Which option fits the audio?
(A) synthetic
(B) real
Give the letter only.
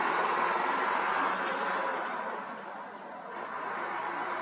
B